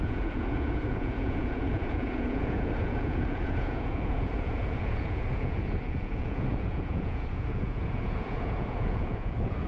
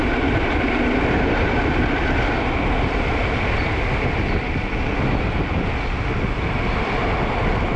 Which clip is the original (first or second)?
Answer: second